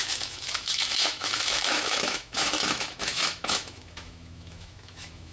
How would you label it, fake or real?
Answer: fake